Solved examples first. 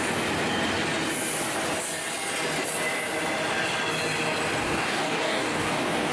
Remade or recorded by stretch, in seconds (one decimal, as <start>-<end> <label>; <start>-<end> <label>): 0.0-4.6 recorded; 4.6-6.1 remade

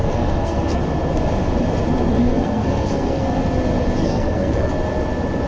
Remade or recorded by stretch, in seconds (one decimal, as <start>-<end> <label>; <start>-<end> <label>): 0.0-0.8 remade; 0.8-2.1 recorded; 2.1-3.4 remade; 3.4-4.0 recorded; 4.0-4.7 remade; 4.7-5.5 recorded

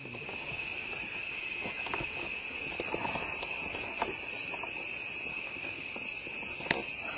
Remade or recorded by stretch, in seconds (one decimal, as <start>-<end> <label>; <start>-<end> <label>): 0.0-5.3 recorded; 5.3-5.9 remade; 5.9-7.2 recorded

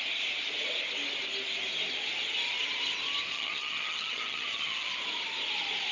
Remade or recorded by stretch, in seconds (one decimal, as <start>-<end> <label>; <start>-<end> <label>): 0.0-3.3 recorded; 3.3-4.9 remade; 4.9-5.9 recorded